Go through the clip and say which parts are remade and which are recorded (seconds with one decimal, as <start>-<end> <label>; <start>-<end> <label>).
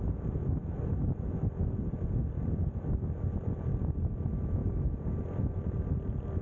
0.0-4.6 recorded; 4.6-6.4 remade